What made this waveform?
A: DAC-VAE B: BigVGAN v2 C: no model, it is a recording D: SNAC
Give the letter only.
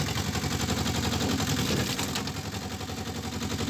C